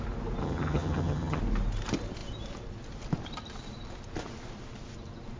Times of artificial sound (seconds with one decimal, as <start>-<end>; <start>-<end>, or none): 0.4-1.4